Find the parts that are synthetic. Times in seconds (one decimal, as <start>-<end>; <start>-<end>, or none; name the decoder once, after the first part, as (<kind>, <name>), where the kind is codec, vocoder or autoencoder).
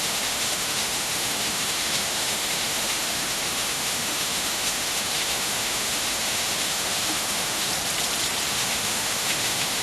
0.0-7.7 (autoencoder, DAC-VAE); 8.5-9.8